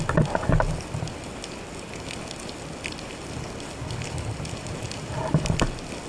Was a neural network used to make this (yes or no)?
no